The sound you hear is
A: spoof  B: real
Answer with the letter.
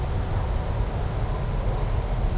B